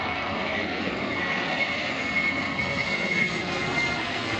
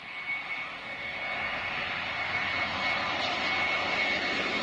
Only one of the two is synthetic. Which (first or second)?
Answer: first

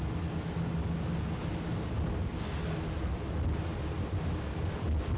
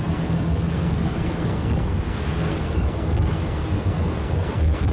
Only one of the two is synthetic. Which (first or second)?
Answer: second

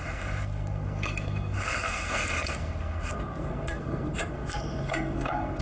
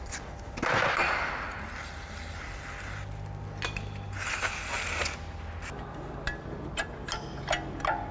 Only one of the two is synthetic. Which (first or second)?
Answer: first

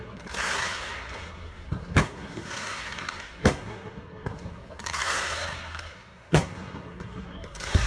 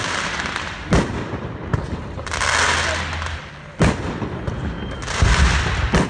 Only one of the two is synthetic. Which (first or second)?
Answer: first